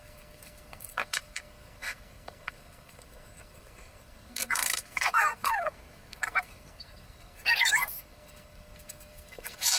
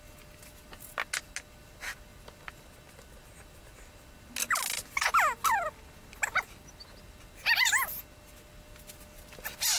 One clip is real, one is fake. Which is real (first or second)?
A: second